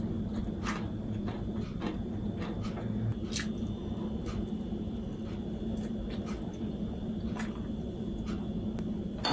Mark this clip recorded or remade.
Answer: recorded